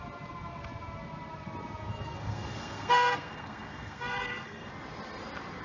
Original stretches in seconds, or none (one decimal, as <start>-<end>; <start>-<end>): 0.0-1.9; 4.7-5.6